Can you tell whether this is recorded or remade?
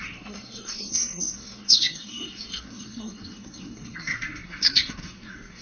remade